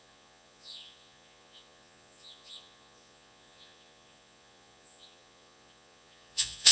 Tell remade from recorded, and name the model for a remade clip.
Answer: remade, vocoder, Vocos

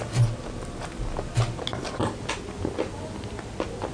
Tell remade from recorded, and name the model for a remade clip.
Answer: recorded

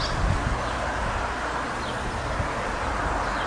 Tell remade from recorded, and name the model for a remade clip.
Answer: recorded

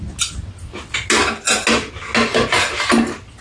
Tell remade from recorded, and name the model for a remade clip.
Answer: recorded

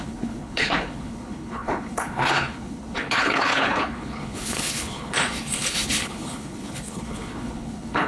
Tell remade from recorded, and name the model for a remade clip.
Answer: remade, codec, HILCodec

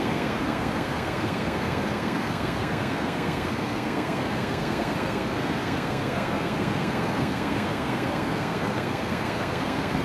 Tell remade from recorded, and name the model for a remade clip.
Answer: remade, codec, SNAC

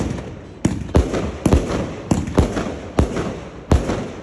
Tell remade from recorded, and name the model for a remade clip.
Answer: recorded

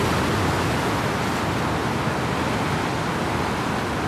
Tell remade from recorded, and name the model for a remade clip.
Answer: recorded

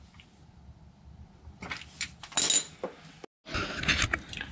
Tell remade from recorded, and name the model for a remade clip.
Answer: recorded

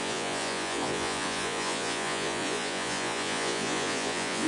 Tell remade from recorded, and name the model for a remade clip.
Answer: remade, vocoder, Vocos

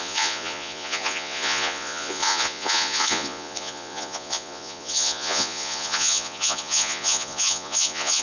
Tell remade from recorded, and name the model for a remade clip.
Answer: remade, vocoder, Vocos